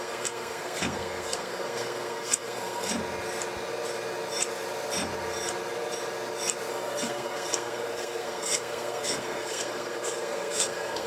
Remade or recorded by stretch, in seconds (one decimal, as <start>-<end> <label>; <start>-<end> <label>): 0.0-2.9 remade; 2.9-6.7 recorded; 6.7-11.1 remade